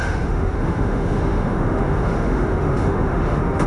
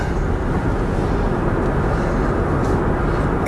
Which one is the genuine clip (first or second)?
second